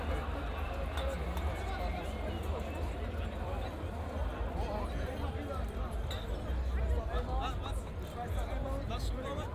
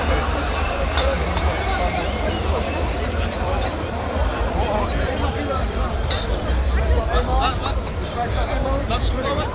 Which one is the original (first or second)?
first